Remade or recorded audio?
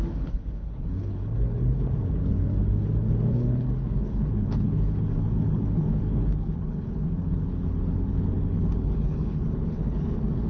remade